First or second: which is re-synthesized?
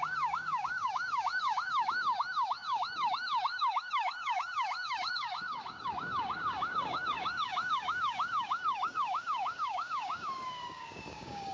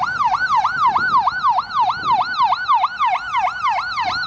first